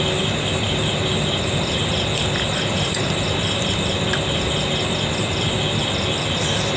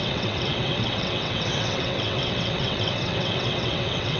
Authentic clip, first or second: first